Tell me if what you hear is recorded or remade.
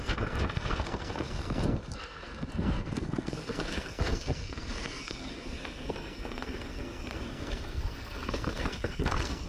remade